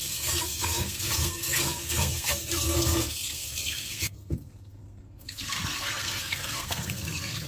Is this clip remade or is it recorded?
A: remade